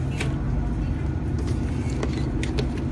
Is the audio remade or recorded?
recorded